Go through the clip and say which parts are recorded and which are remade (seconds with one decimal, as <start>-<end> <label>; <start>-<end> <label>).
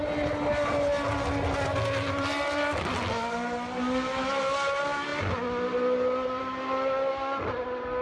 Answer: 0.0-8.0 recorded